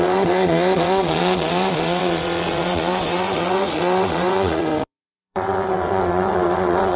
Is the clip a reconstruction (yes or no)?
yes